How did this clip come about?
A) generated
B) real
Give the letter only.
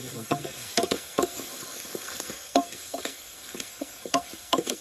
A